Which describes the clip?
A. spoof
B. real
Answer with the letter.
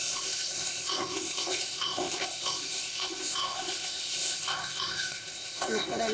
A